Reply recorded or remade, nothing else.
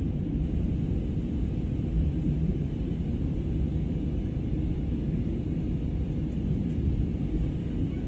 recorded